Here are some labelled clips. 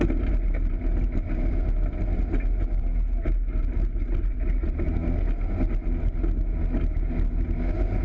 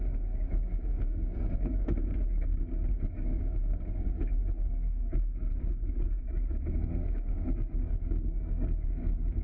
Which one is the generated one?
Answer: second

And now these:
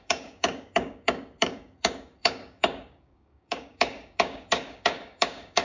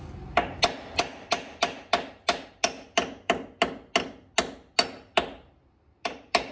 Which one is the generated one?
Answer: first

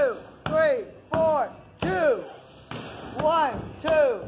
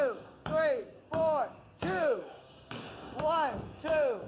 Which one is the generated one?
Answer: second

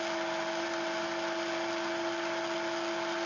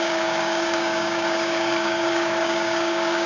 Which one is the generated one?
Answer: second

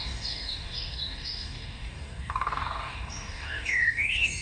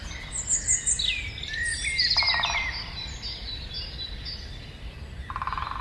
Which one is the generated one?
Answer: first